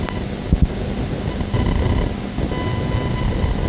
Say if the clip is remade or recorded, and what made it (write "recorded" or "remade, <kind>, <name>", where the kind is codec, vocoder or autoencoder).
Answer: recorded